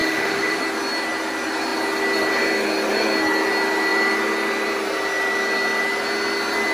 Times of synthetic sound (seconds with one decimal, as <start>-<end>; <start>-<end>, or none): 0.0-0.6

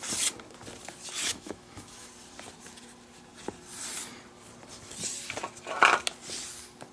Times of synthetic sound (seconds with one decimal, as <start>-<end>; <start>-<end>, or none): 1.2-2.1

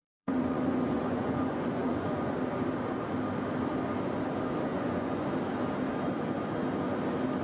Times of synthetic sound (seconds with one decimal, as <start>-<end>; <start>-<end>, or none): 0.0-2.3; 4.7-5.3

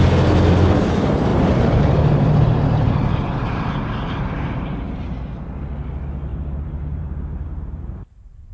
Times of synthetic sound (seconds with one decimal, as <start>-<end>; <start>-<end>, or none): 1.3-5.2; 6.3-8.5